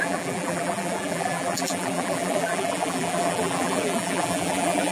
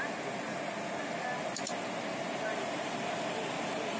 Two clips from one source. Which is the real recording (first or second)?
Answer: second